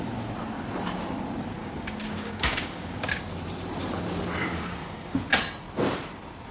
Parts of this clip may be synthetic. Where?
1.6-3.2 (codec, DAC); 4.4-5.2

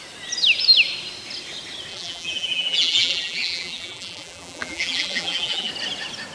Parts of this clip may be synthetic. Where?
1.9-5.7 (vocoder, BigVGAN v2)

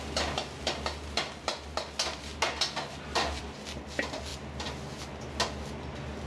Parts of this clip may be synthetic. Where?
none

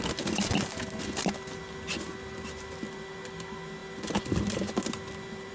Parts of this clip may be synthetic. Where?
none

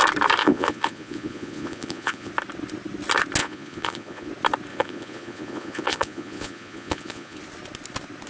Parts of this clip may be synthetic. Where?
0.4-2.3 (vocoder, Vocos); 3.4-4.3; 4.7-7.4

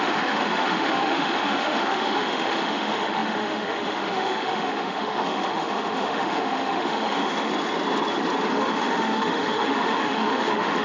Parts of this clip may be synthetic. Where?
0.0-7.5 (autoencoder, DAC-VAE); 8.5-10.8

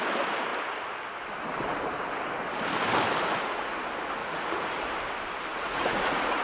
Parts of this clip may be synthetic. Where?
4.2-4.8 (vocoder, Vocos); 5.5-6.4

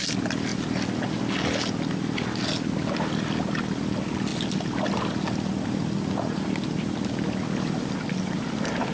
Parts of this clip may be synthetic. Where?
none